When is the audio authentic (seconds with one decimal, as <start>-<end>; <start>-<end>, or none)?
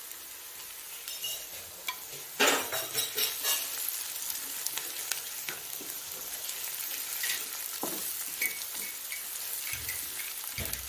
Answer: 0.0-10.9